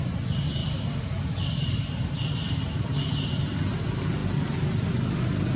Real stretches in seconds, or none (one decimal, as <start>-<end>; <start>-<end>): 0.0-0.6; 2.8-5.6